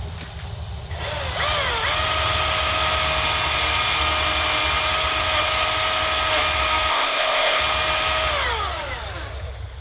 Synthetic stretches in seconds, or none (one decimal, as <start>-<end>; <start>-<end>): 6.9-7.6

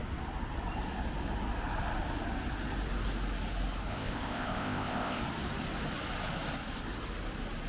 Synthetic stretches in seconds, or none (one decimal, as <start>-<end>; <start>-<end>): 3.9-5.2

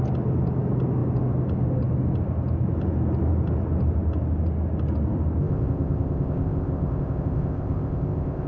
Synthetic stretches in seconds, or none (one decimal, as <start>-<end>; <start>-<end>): 5.4-8.5